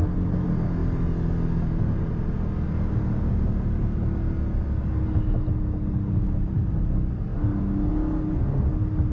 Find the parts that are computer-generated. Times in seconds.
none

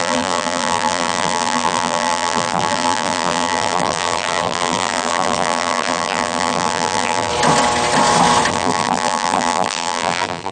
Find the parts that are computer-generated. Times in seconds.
0.0-7.3 (vocoder, BigVGAN v2); 8.5-10.5

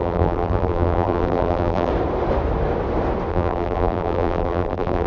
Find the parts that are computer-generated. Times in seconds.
0.0-1.9 (vocoder, BigVGAN v2); 3.3-5.1